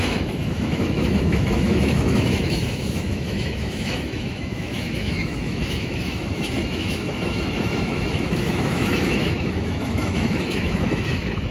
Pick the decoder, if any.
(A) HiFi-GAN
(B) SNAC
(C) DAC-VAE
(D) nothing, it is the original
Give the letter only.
C